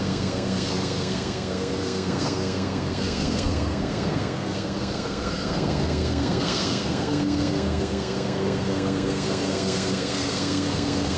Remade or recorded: remade